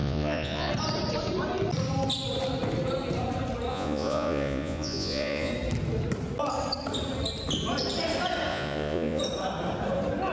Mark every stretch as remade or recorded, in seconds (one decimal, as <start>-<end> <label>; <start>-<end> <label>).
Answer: 0.0-0.7 remade; 0.7-3.7 recorded; 3.7-5.5 remade; 5.5-8.5 recorded; 8.5-9.2 remade; 9.2-10.3 recorded